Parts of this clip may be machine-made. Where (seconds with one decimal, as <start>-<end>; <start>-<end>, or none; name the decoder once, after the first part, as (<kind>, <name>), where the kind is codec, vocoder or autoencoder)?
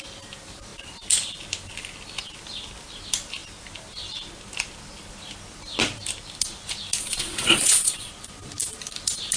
7.0-8.1 (vocoder, Vocos)